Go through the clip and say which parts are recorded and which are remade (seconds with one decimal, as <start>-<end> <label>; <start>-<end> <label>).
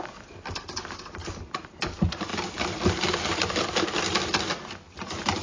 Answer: 0.0-5.4 recorded